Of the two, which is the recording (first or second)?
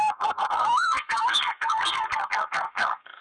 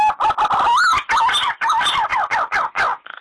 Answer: second